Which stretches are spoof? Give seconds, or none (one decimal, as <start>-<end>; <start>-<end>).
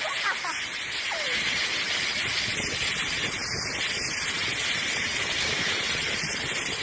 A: none